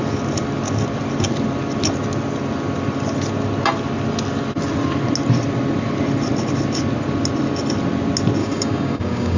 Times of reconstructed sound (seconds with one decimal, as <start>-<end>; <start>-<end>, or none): 8.4-9.4